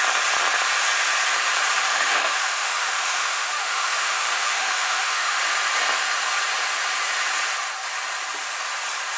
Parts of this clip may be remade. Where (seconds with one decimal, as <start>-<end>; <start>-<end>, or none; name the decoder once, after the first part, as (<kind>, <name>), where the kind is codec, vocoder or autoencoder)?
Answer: 1.9-5.4 (autoencoder, DAC-VAE)